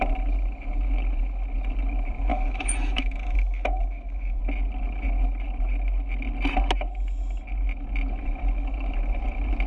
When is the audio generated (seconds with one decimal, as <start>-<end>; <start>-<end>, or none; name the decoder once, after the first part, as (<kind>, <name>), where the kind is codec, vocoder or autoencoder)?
2.3-4.4 (autoencoder, DAC-VAE)